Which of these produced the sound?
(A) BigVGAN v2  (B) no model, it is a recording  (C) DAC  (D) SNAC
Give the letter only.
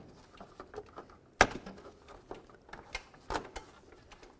B